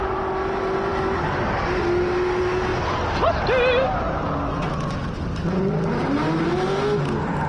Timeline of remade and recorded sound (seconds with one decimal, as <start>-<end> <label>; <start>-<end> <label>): 0.0-7.5 recorded